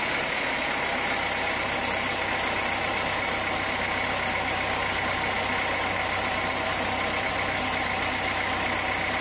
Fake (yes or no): no